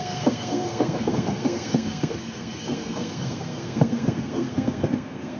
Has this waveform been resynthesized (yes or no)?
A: yes